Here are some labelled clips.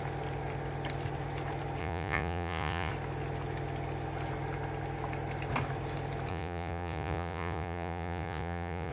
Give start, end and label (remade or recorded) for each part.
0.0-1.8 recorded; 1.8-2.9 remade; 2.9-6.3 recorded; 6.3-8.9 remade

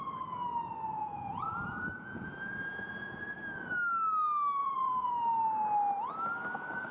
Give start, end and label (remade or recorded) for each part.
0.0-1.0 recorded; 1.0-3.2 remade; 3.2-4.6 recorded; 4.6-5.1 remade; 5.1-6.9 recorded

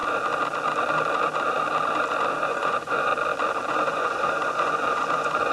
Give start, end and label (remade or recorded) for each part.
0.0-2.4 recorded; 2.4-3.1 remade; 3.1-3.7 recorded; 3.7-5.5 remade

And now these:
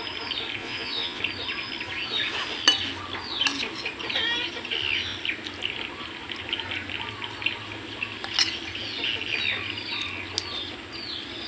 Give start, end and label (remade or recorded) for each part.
0.0-0.6 recorded; 0.6-1.2 remade; 1.2-11.5 recorded